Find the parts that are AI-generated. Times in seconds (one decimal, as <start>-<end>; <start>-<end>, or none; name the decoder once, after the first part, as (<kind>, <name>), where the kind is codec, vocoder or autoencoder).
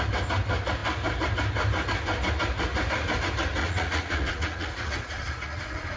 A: 3.6-6.0 (vocoder, Vocos)